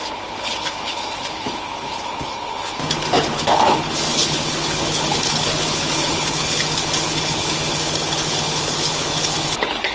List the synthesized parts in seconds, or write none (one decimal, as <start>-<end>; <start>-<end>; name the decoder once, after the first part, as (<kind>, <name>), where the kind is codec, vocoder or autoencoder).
0.0-9.9 (codec, HILCodec)